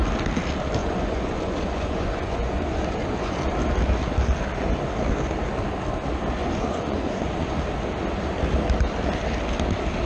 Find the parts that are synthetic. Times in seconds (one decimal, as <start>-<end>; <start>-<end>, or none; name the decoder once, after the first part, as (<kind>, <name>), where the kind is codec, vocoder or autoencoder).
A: 0.8-3.4 (vocoder, Vocos); 6.4-7.6

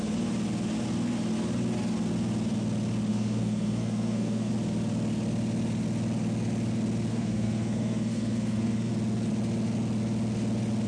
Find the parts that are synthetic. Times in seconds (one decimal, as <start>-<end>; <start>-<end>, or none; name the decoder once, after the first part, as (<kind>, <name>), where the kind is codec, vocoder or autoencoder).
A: 3.1-4.5 (codec, SNAC); 7.1-8.9